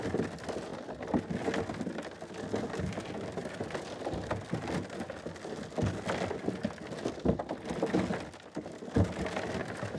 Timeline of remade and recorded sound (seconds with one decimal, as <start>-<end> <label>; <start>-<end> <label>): 0.0-10.0 recorded